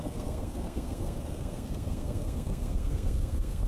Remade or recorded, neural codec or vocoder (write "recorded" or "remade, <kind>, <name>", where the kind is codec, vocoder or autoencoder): remade, codec, SNAC